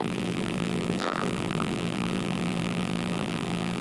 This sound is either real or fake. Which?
fake